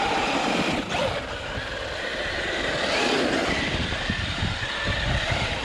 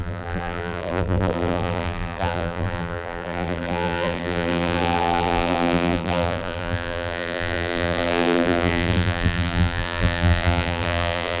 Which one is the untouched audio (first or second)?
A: first